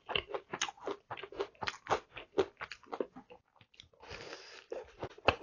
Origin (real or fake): real